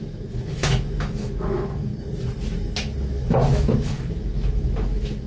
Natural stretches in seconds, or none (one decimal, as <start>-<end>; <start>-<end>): 1.9-3.0